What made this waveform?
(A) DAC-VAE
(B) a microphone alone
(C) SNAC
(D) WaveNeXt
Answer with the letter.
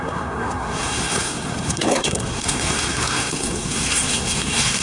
C